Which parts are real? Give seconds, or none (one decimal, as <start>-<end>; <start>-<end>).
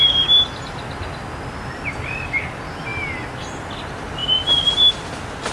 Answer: 0.0-5.5